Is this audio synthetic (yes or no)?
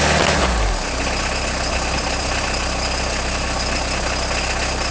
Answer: no